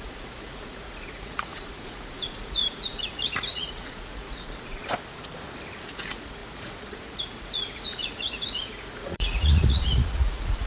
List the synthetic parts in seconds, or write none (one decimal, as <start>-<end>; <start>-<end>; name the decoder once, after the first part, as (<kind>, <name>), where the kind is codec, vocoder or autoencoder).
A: 0.0-4.8 (vocoder, Vocos); 5.9-10.7